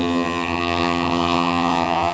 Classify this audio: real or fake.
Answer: fake